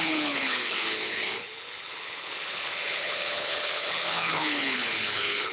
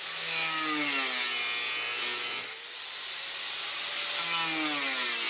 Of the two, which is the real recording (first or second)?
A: second